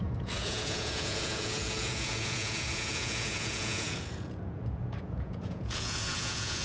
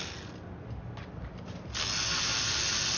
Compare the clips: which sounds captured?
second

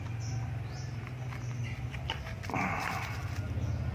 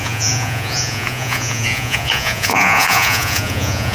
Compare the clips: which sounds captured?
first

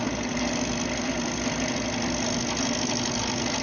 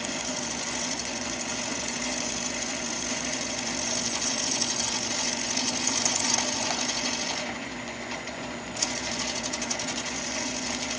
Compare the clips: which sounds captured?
first